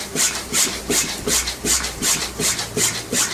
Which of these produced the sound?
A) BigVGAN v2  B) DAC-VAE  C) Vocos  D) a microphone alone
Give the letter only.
A